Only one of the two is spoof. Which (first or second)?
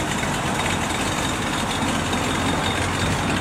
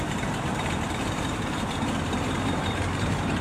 second